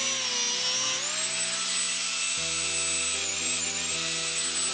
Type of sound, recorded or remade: recorded